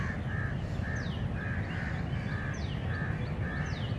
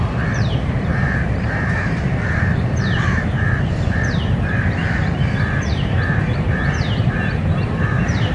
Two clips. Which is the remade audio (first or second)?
second